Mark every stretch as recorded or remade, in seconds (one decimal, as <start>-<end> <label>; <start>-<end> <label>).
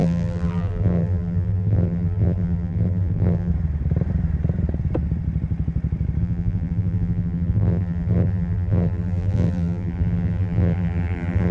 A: 0.0-3.5 remade; 3.5-6.2 recorded; 6.2-11.5 remade